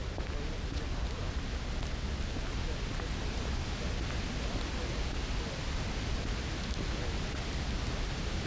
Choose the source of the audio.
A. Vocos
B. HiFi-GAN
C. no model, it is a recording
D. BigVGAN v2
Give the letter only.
C